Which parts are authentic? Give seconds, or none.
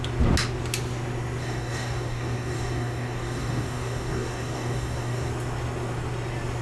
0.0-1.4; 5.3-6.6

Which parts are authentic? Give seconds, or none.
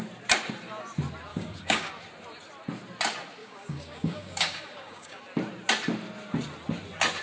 0.0-1.3; 1.9-3.4; 5.2-7.2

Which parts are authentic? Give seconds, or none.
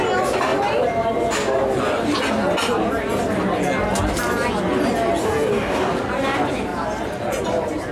0.0-5.2; 5.9-7.9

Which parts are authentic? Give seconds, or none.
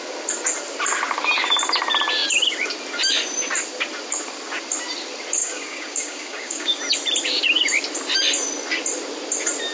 0.0-5.4; 6.8-9.7